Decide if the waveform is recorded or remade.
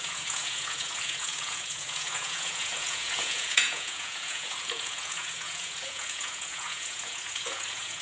remade